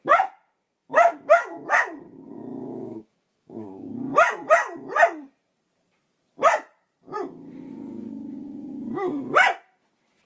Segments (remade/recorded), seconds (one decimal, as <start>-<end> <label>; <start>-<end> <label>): 0.0-0.8 recorded; 0.8-1.7 remade; 1.7-2.5 recorded; 2.5-3.9 remade; 3.9-10.3 recorded